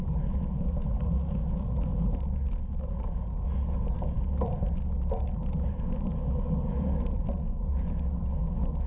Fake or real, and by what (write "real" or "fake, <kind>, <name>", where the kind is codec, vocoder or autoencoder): real